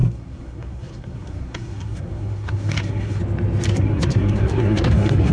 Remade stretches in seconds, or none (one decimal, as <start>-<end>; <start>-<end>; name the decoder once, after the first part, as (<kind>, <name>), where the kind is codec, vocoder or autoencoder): 0.0-3.2 (codec, SNAC); 3.7-5.3